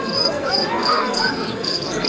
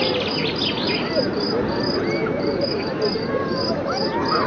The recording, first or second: second